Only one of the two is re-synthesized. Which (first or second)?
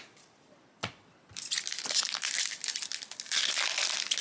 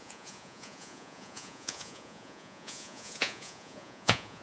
second